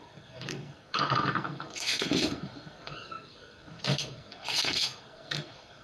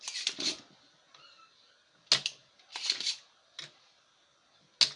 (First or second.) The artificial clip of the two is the first